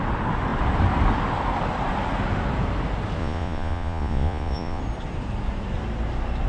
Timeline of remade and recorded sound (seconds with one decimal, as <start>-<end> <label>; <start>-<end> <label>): 0.0-3.2 recorded; 3.2-4.8 remade; 4.8-6.5 recorded